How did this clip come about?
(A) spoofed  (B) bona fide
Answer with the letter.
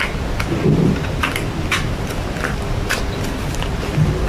B